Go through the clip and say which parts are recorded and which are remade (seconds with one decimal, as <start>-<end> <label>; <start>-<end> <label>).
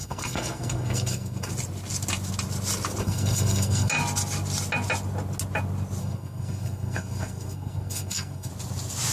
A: 0.0-1.5 remade; 1.5-3.0 recorded; 3.0-3.9 remade; 3.9-6.0 recorded; 6.0-8.5 remade; 8.5-9.1 recorded